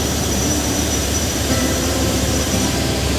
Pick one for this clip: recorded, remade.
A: remade